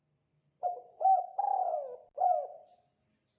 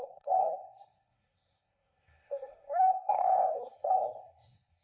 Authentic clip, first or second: first